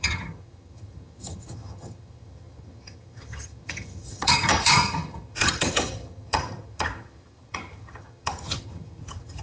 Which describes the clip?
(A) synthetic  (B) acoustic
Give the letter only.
A